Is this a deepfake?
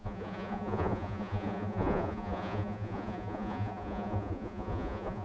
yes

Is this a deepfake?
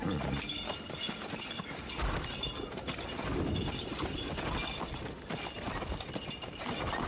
no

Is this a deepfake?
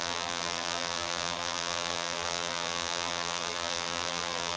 yes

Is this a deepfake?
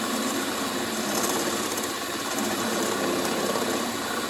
yes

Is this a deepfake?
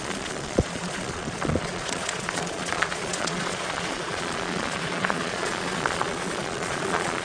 yes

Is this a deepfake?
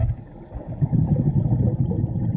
no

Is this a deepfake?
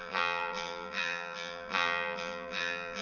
yes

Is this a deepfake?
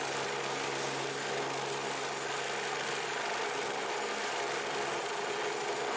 no